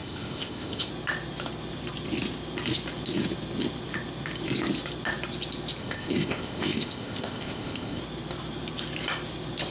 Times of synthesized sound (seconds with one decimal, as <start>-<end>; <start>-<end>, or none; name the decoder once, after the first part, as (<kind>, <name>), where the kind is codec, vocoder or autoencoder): 0.0-0.9 (codec, ZipCodec); 5.8-8.0